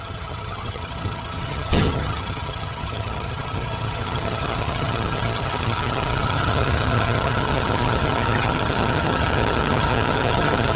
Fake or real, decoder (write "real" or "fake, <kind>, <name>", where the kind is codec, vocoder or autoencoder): fake, vocoder, HiFi-GAN